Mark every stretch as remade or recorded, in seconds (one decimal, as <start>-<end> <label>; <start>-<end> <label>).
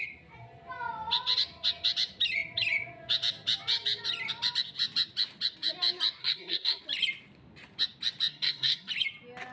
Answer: 0.0-6.2 recorded; 6.2-6.8 remade; 6.8-8.3 recorded; 8.3-8.9 remade; 8.9-9.5 recorded